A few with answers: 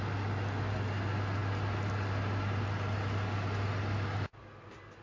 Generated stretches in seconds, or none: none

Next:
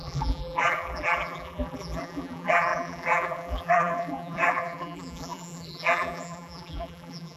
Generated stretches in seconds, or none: 0.0-7.4 (vocoder, BigVGAN v2)

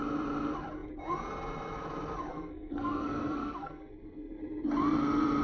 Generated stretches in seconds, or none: 2.3-4.4 (codec, SNAC)